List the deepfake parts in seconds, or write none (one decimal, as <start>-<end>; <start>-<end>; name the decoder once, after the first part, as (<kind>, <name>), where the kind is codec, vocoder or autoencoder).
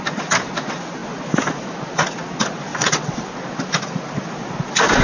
2.7-3.3 (vocoder, WaveNeXt)